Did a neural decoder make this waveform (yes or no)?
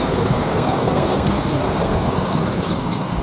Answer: yes